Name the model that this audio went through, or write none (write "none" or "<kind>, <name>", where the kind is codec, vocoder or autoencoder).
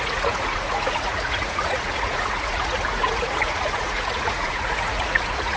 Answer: vocoder, Vocos